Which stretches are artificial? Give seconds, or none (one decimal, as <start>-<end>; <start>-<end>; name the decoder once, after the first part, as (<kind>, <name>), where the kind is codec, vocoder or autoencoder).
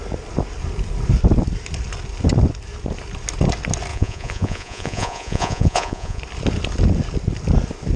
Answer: 3.9-6.2 (vocoder, Vocos)